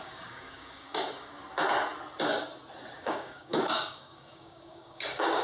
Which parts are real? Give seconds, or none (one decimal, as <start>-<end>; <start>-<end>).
1.4-3.0

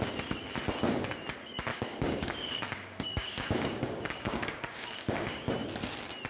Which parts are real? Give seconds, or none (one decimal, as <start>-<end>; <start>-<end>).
0.0-1.7; 5.5-6.3

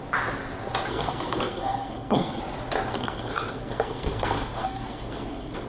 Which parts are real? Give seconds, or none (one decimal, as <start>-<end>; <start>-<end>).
0.0-0.9; 2.4-2.9

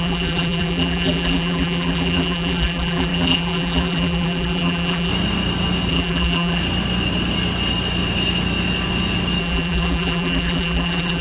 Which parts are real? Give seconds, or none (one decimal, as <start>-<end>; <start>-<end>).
5.1-5.9; 6.6-9.4